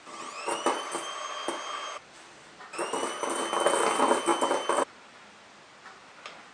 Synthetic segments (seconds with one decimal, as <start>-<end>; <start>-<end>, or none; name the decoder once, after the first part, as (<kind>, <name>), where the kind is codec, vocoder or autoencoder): none